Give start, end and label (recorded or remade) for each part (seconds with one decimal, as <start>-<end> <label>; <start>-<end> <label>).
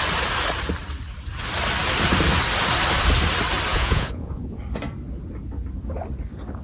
0.0-3.7 recorded; 3.7-4.6 remade; 4.6-6.6 recorded